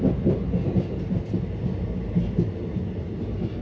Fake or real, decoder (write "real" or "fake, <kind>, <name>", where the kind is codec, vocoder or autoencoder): real